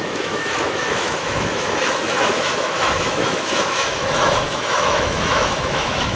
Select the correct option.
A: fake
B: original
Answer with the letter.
A